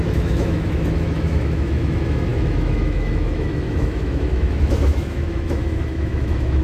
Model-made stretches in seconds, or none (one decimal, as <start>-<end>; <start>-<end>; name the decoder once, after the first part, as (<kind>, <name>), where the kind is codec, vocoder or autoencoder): 0.0-6.6 (autoencoder, DAC-VAE)